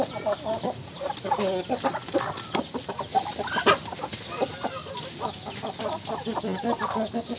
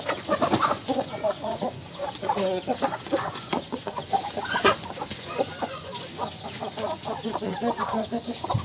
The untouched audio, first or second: first